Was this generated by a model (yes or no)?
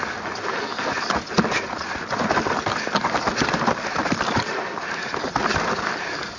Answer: no